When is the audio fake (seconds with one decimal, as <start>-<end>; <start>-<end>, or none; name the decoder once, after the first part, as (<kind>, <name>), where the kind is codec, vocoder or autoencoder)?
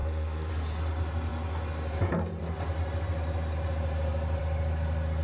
0.0-0.5 (codec, SNAC)